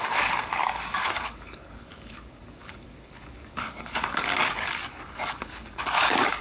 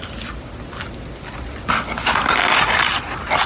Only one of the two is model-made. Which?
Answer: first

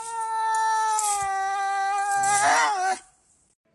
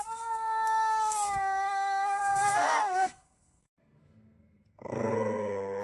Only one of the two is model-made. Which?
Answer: second